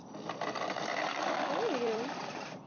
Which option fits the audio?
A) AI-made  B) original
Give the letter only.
A